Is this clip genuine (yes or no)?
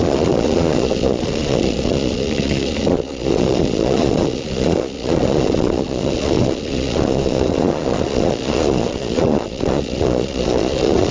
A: no